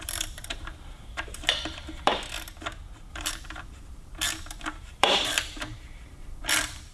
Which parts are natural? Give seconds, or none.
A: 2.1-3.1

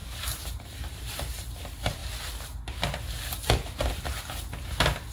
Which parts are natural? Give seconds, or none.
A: 1.6-5.1